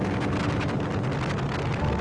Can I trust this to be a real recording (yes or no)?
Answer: yes